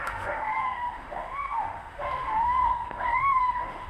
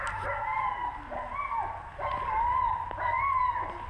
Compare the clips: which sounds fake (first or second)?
first